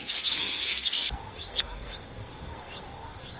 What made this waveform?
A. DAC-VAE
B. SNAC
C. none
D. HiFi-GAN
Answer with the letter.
B